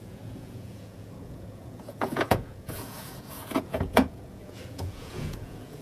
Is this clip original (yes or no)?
no